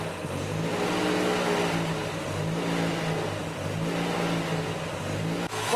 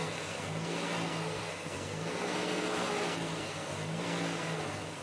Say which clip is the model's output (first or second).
second